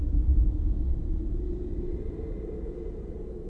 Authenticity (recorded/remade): remade